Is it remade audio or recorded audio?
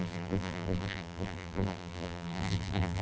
remade